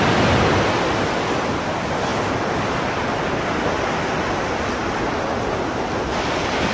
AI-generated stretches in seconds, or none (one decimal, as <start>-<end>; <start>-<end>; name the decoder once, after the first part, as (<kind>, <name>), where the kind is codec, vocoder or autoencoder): none